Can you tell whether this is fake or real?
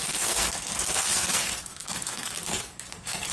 fake